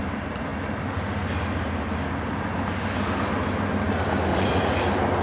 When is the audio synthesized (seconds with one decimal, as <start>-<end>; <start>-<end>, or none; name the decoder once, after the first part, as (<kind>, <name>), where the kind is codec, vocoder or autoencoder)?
4.3-4.8 (vocoder, Vocos)